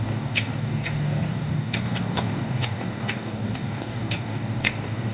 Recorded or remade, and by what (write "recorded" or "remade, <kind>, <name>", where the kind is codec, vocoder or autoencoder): remade, codec, DAC